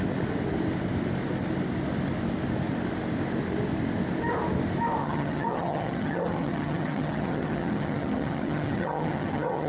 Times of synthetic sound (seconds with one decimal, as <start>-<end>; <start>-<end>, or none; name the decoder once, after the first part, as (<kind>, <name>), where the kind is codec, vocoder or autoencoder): 5.0-9.7 (vocoder, HiFi-GAN)